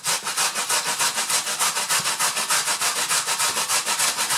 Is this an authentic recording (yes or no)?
yes